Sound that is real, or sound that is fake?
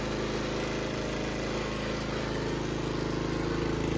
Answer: real